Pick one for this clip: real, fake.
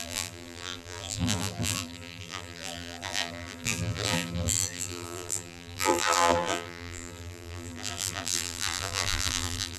fake